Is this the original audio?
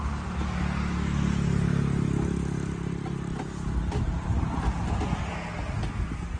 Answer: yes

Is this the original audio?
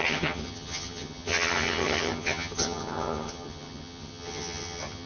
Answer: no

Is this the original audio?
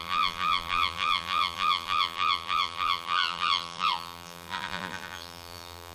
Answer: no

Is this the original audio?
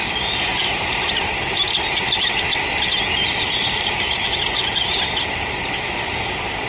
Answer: yes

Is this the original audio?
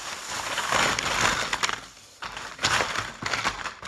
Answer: yes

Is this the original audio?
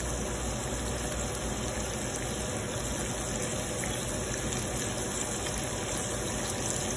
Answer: yes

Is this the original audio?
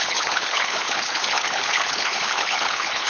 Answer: no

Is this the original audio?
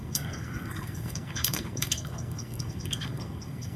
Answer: no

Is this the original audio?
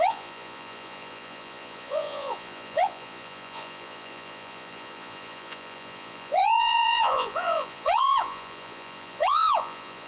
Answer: no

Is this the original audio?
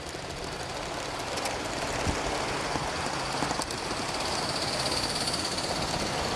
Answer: yes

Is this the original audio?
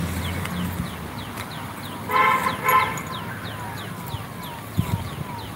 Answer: yes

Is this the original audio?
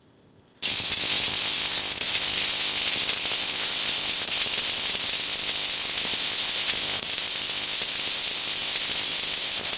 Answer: no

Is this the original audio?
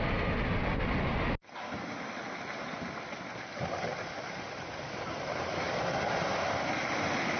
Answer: yes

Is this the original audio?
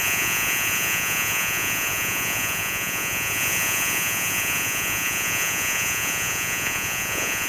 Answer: no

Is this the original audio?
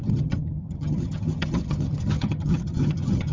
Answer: no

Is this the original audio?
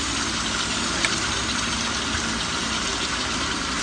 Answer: yes